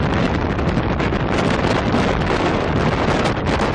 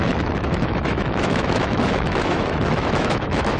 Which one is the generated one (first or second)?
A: second